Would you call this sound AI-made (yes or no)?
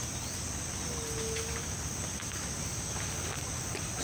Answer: no